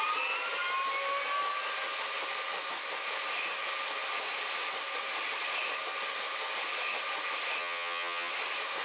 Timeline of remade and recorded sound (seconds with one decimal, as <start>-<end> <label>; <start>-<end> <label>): 0.0-7.6 recorded; 7.6-8.3 remade; 8.3-8.8 recorded